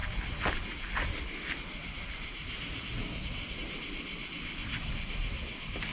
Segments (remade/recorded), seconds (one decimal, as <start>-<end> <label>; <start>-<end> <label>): 0.0-5.9 recorded